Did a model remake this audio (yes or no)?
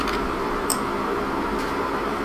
yes